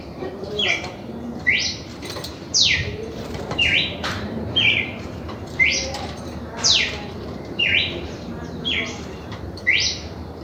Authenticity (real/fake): fake